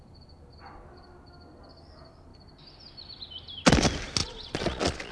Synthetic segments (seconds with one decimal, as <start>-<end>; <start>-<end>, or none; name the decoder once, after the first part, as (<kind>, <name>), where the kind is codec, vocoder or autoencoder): 4.2-5.1 (vocoder, Vocos)